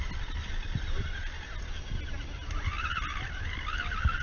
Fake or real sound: real